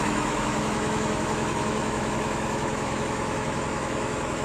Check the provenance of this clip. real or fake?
fake